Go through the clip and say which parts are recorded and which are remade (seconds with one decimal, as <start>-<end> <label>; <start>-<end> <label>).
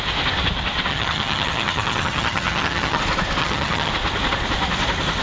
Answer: 0.0-0.9 recorded; 0.9-3.0 remade; 3.0-3.4 recorded; 3.4-3.9 remade; 3.9-5.2 recorded